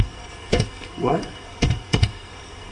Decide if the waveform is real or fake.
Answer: fake